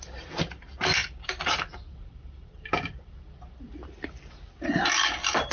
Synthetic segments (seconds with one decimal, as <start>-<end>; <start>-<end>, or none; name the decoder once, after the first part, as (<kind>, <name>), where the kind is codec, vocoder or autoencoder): none